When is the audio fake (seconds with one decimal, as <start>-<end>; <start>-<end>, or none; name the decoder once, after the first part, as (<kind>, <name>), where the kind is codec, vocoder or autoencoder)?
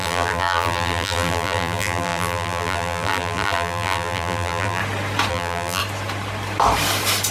0.0-4.8 (vocoder, BigVGAN v2); 5.3-5.8